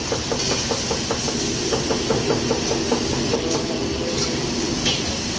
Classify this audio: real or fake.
real